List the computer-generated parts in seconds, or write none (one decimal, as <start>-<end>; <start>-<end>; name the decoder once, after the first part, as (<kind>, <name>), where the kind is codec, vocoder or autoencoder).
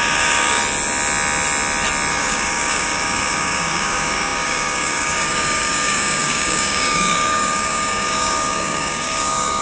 0.0-0.6 (codec, DAC); 2.1-9.6